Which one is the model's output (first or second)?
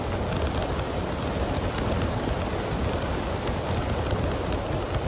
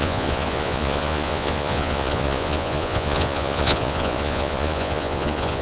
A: second